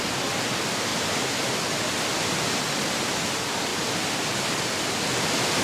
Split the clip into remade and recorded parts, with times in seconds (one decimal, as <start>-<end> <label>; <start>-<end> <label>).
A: 0.0-5.6 recorded